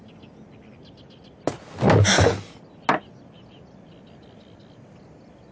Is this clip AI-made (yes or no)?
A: no